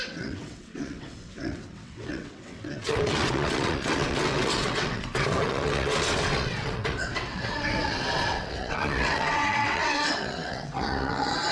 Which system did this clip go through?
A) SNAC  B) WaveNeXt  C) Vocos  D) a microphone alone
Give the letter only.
B